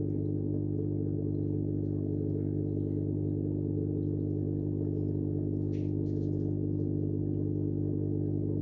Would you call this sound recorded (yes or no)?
yes